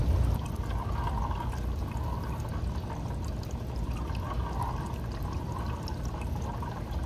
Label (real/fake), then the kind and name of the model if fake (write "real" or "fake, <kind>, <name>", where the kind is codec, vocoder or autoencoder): real